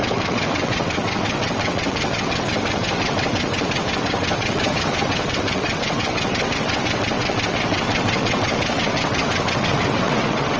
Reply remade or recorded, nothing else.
remade